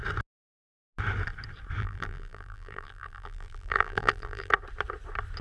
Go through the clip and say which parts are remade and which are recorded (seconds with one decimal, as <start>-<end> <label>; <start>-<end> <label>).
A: 0.0-1.8 recorded; 1.8-4.5 remade; 4.5-5.4 recorded